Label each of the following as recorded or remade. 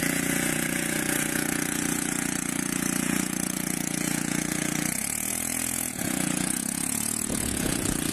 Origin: remade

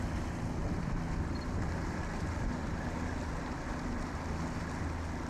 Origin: recorded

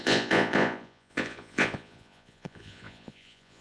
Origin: remade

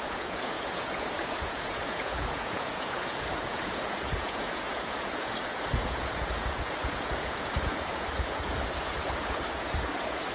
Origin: remade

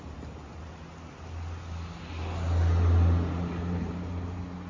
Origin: recorded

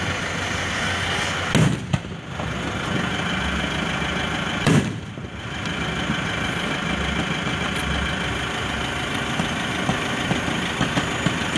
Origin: recorded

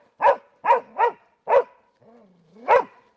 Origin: recorded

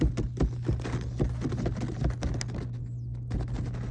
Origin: recorded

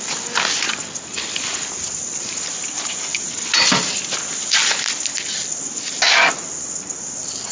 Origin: recorded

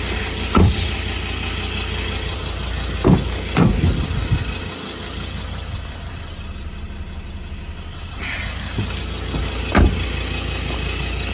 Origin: recorded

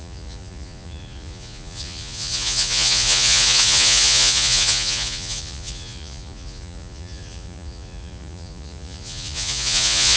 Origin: remade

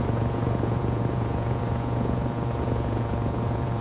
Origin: remade